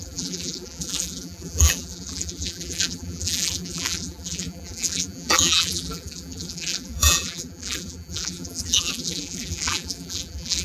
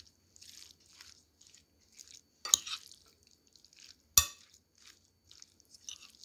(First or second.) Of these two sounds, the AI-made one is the first